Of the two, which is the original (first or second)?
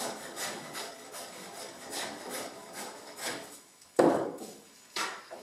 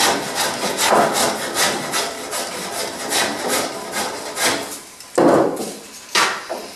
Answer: second